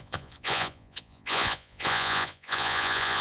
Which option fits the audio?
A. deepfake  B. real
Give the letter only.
A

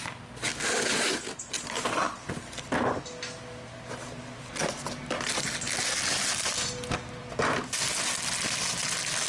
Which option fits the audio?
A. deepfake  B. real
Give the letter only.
B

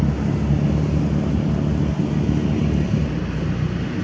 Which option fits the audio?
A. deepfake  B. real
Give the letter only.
B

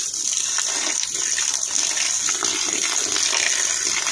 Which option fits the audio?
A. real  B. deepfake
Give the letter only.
A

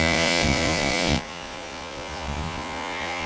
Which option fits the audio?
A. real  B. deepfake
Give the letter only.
B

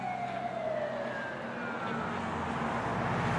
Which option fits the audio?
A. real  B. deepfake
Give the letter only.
A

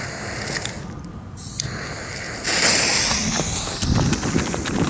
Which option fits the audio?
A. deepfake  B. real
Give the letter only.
B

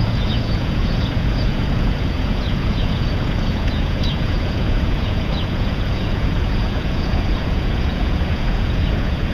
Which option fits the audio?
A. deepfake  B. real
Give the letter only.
A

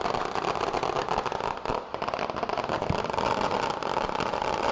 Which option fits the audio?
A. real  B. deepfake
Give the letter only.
B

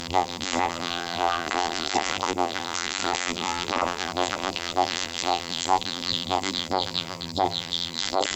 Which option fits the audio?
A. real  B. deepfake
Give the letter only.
B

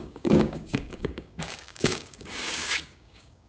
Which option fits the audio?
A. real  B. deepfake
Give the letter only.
B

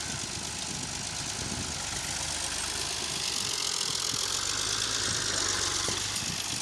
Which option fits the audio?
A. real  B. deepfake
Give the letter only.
A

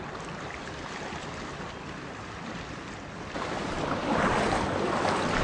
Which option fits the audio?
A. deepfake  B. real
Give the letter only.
B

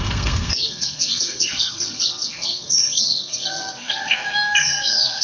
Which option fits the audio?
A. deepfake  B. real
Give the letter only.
A